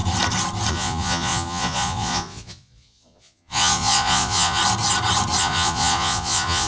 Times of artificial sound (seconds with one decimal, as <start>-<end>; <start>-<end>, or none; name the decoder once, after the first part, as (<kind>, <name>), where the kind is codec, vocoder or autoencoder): 0.7-4.6 (vocoder, Vocos); 5.4-6.7